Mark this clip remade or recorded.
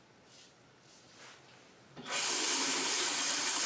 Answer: recorded